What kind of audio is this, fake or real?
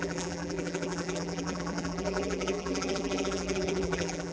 fake